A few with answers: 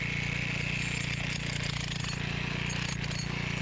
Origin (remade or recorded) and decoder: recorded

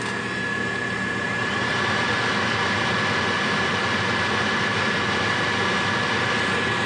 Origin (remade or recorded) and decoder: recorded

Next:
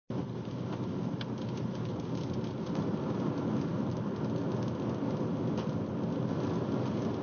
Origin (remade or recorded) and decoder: recorded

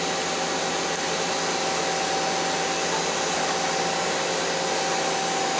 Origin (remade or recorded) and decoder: recorded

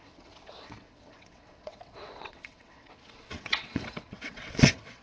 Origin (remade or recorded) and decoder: remade, vocoder, WaveNeXt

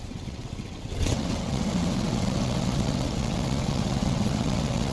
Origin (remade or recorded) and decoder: remade, vocoder, WaveNeXt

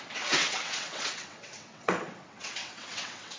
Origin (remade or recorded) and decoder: remade, vocoder, WaveNeXt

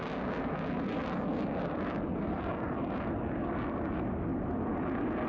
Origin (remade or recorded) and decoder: recorded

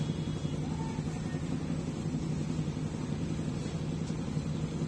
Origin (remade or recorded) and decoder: recorded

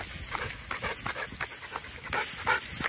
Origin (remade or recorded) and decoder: recorded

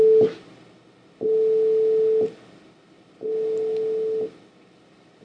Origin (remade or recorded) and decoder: recorded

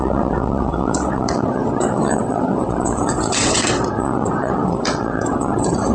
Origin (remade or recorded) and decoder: remade, vocoder, WaveNeXt